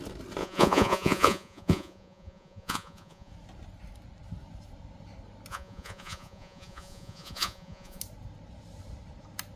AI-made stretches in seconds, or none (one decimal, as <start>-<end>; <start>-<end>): 0.4-3.3; 5.5-8.0